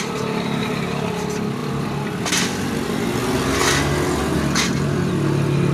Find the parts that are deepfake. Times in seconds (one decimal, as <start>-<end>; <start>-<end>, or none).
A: none